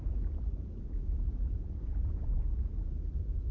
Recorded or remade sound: recorded